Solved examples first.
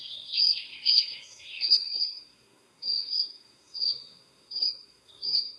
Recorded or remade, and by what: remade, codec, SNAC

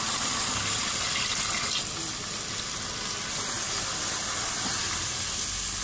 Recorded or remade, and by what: recorded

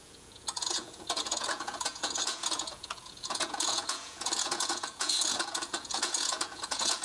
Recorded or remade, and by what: remade, vocoder, Vocos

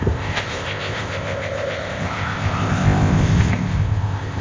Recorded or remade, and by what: remade, codec, ZipCodec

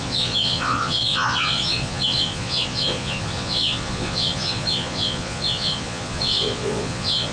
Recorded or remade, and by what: remade, vocoder, Vocos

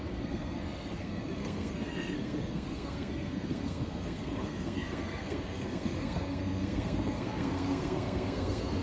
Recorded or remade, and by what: remade, codec, SNAC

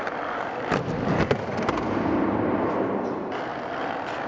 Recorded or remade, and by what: recorded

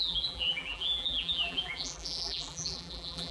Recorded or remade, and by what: remade, vocoder, BigVGAN v2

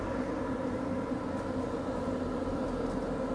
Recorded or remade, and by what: recorded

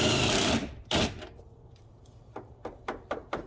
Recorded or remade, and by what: recorded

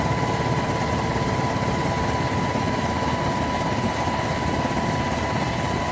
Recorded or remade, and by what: recorded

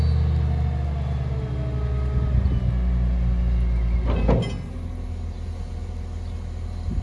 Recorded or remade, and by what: recorded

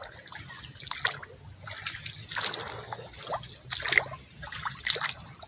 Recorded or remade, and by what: recorded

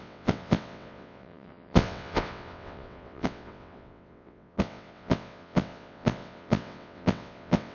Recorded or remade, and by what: remade, vocoder, WaveNeXt